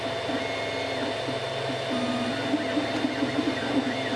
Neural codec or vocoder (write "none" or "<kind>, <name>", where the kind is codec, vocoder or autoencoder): none